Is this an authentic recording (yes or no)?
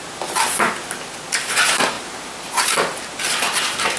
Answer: yes